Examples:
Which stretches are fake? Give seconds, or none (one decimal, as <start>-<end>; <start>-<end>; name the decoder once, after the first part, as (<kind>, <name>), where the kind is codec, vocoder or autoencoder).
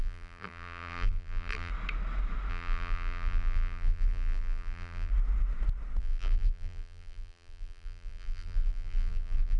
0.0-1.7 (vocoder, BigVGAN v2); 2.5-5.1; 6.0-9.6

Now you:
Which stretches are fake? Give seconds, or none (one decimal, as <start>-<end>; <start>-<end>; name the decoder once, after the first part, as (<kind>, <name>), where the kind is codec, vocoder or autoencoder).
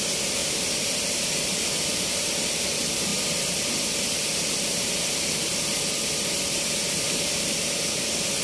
0.0-8.4 (vocoder, BigVGAN v2)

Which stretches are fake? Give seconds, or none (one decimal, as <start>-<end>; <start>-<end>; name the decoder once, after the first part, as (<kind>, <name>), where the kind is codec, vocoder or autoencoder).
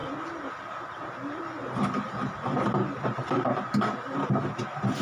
none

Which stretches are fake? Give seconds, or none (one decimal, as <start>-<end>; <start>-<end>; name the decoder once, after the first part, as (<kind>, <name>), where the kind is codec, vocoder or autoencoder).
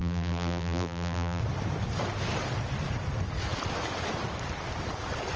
0.0-1.4 (vocoder, BigVGAN v2)